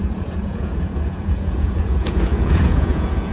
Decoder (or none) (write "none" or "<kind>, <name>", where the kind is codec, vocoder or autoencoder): vocoder, Vocos